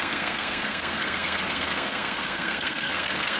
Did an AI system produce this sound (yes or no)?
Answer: yes